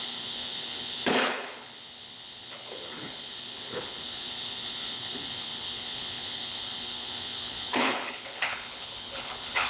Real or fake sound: fake